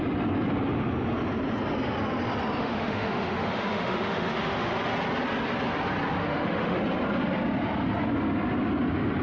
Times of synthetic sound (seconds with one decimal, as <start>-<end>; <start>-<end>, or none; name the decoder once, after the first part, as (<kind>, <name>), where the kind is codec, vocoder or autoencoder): 2.6-4.7 (autoencoder, DAC-VAE); 6.2-6.8